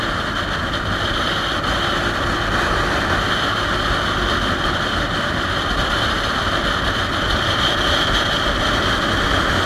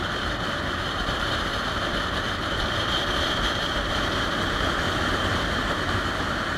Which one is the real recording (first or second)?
first